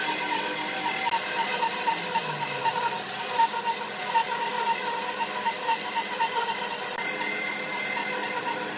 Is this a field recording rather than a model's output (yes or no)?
yes